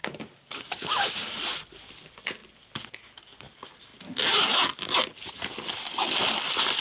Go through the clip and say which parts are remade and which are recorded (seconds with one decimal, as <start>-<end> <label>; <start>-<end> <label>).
0.0-1.3 remade; 1.3-6.8 recorded